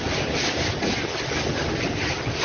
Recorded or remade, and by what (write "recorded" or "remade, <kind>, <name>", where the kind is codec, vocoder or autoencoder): recorded